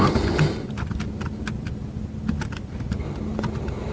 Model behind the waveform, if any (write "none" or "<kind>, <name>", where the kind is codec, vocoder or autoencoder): none